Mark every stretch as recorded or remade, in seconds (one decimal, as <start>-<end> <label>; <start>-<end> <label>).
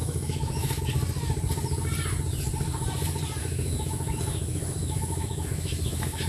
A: 0.0-0.8 remade; 0.8-3.4 recorded; 3.4-6.3 remade